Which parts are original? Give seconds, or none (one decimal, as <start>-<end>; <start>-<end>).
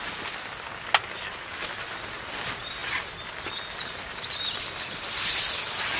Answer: 0.0-6.0